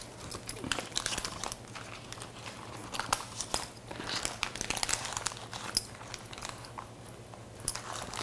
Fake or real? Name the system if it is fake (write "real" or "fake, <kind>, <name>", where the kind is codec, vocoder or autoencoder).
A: real